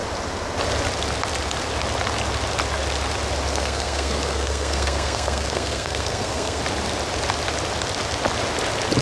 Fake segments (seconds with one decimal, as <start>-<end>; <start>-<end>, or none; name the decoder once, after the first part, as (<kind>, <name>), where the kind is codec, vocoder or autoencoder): 3.5-6.6 (codec, SNAC)